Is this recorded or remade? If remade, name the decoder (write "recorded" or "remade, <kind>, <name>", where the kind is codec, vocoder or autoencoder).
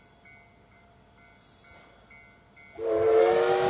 recorded